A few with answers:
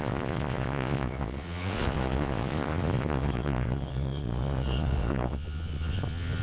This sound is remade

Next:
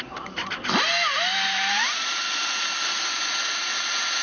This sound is remade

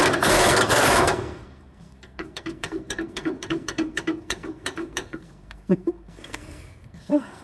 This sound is remade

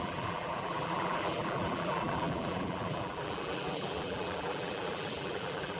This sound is remade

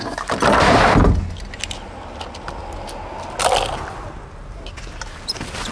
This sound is recorded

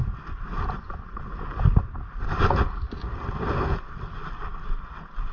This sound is recorded